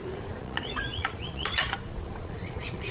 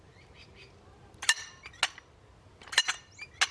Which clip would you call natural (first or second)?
second